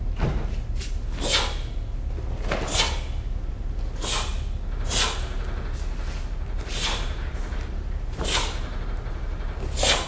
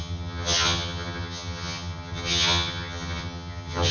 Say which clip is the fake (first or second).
second